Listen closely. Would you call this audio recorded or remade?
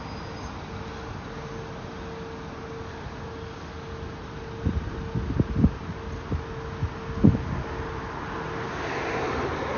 recorded